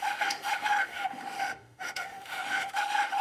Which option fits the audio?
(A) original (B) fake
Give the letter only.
B